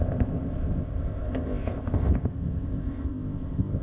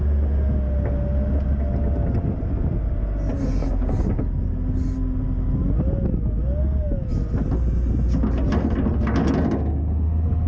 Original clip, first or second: second